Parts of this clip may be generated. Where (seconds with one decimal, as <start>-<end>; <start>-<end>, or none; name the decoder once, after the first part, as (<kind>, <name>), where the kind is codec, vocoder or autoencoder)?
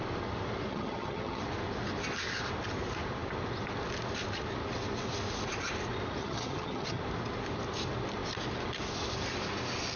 0.7-1.4 (vocoder, HiFi-GAN); 6.2-7.0